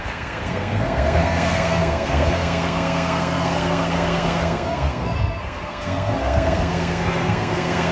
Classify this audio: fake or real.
fake